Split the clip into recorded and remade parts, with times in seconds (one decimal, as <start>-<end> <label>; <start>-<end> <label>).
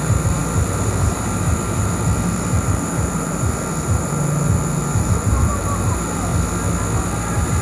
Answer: 0.0-6.3 remade; 6.3-7.0 recorded; 7.0-7.6 remade